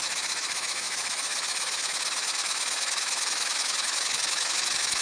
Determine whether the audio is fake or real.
fake